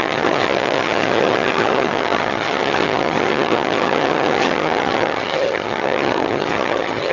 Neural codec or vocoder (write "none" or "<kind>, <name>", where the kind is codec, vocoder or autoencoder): vocoder, HiFi-GAN